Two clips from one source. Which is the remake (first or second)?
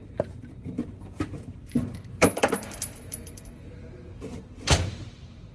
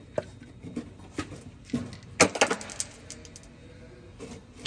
first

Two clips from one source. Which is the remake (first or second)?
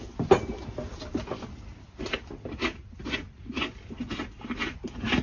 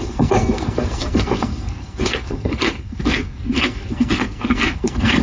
second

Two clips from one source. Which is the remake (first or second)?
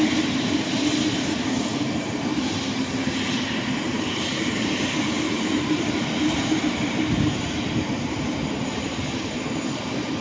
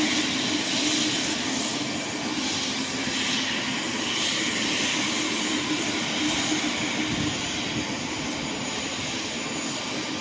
first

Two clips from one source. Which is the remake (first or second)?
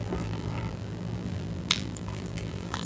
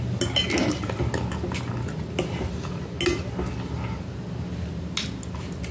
first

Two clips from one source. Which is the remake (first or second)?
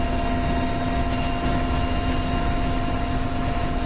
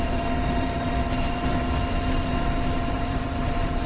second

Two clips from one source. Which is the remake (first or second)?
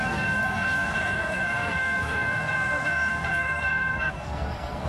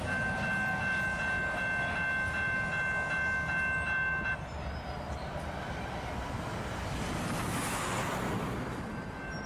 first